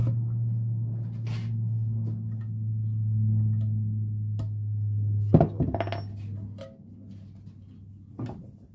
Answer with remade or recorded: recorded